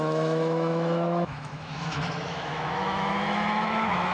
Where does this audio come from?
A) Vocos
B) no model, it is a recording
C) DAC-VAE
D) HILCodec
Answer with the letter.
C